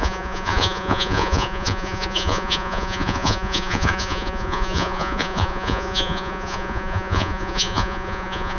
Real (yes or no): no